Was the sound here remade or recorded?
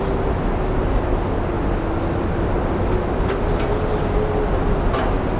recorded